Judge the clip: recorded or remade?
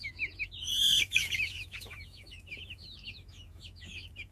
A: remade